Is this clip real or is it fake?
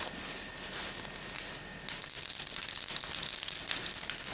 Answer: real